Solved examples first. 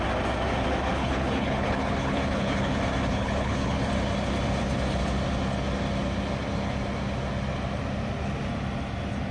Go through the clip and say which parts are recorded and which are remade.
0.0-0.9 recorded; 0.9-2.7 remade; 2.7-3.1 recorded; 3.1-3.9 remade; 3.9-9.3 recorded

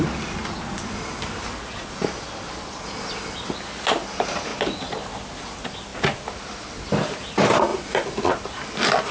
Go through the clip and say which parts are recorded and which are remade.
0.0-9.1 recorded